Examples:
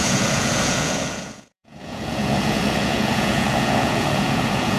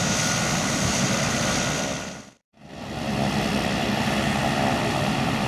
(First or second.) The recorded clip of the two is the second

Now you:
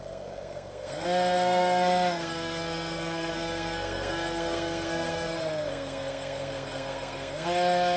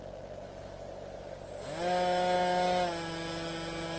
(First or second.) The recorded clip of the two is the second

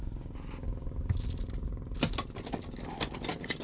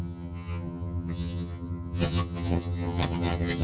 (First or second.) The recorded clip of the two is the first